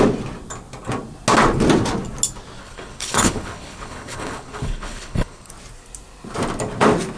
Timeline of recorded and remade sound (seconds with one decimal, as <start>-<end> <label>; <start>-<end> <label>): 0.0-2.6 recorded; 2.6-5.5 remade; 5.5-7.2 recorded